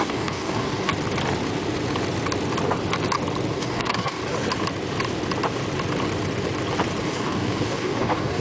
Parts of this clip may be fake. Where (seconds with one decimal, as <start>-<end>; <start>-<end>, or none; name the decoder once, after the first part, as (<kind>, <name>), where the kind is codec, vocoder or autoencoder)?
0.0-0.9 (codec, DAC); 3.5-4.2; 7.0-8.4